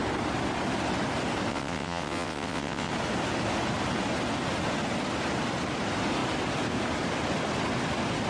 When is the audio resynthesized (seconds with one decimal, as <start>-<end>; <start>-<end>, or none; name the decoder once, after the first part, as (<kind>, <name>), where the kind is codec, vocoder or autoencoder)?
1.5-2.9 (vocoder, WaveNeXt)